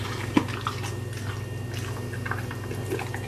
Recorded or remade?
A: recorded